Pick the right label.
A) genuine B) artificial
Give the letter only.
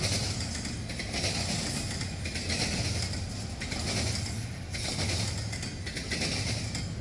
A